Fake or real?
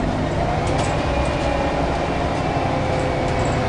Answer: real